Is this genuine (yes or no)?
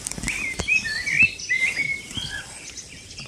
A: yes